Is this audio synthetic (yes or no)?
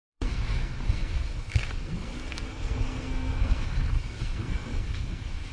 yes